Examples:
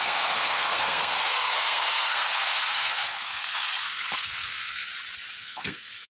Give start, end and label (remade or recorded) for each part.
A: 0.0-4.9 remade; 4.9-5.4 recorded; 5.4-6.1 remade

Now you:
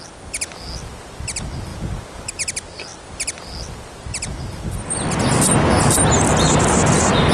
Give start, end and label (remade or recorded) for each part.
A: 0.0-7.3 recorded

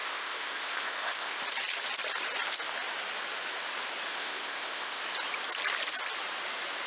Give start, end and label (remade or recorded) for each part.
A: 0.0-1.4 remade; 1.4-4.1 recorded; 4.1-5.0 remade; 5.0-6.9 recorded

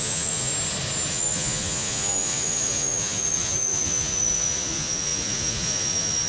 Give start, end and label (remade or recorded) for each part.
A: 0.0-0.5 remade; 0.5-1.1 recorded; 1.1-6.3 remade